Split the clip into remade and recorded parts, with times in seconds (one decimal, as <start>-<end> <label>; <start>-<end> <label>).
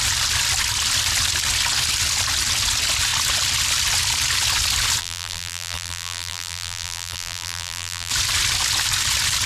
0.0-5.0 recorded; 5.0-8.1 remade; 8.1-9.5 recorded